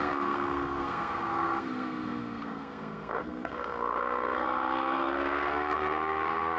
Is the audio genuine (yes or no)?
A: no